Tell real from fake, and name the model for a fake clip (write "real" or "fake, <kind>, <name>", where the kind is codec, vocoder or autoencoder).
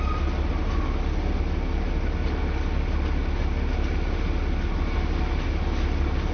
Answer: real